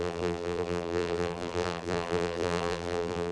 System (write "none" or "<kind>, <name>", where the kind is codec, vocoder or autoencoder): vocoder, BigVGAN v2